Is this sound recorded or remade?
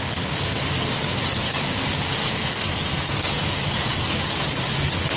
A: recorded